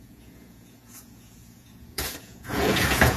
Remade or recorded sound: remade